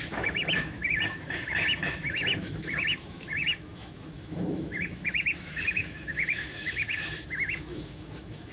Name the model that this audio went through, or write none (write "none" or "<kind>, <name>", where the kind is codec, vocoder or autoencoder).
autoencoder, DAC-VAE